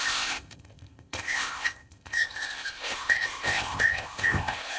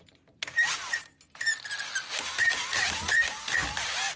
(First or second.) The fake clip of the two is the first